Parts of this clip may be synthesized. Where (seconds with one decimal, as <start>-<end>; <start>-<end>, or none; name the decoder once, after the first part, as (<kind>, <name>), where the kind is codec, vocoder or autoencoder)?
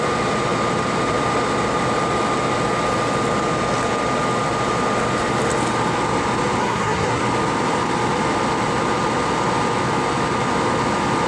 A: 6.6-7.2 (codec, SNAC)